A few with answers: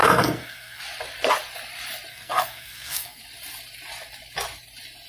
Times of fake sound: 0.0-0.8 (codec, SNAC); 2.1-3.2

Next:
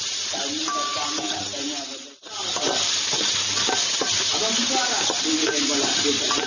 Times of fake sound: none

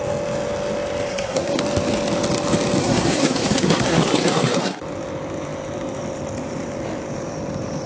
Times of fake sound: 1.1-1.6 (codec, SNAC); 2.8-4.8

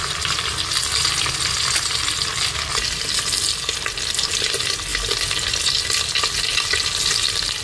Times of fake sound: none

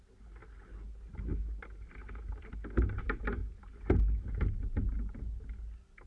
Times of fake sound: none